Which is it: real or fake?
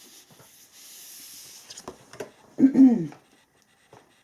real